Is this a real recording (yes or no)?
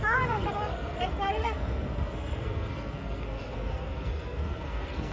no